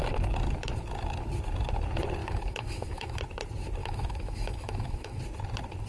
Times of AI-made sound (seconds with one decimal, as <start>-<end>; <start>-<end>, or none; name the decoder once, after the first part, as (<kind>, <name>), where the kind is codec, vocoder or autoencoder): 2.2-3.2 (autoencoder, DAC-VAE); 3.8-5.2